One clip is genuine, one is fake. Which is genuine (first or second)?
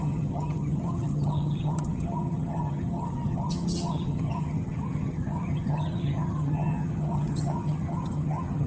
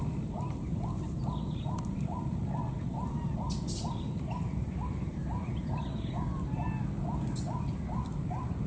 second